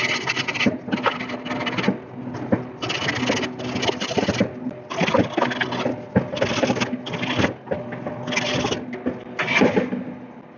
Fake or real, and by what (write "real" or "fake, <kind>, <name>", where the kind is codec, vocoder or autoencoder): real